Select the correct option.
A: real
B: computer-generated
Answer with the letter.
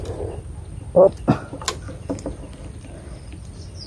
A